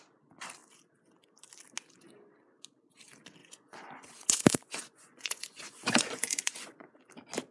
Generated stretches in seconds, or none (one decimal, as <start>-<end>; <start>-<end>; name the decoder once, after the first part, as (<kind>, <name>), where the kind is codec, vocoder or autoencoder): 3.4-7.0 (vocoder, Vocos)